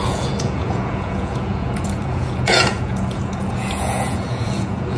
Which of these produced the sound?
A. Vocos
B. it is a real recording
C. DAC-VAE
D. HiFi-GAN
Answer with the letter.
A